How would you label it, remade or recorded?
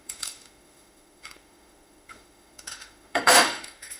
remade